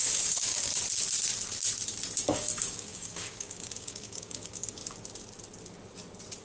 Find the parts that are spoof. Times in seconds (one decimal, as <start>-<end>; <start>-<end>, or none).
0.0-0.7; 2.2-4.8